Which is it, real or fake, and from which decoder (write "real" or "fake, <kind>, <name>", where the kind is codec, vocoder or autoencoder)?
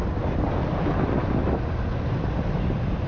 real